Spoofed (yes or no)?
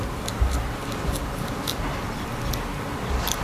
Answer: no